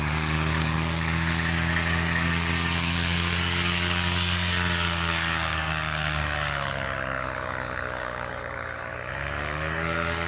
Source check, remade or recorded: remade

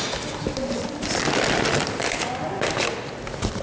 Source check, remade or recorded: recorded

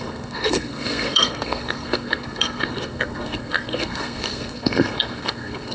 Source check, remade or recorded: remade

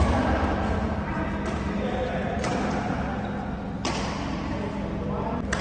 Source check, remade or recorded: recorded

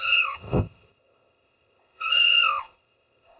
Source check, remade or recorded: remade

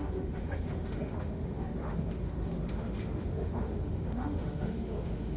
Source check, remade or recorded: remade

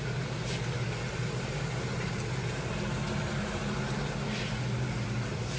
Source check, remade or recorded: remade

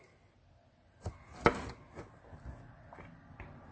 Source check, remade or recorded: recorded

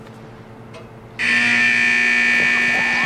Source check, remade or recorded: recorded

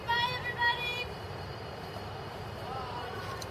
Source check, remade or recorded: remade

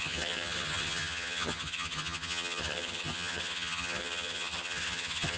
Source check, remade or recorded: remade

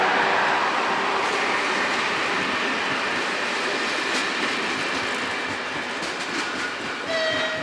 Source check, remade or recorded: recorded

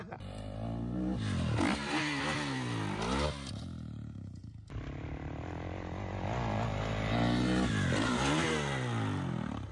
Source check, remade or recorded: recorded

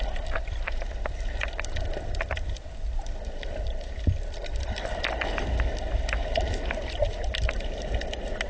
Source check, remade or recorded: recorded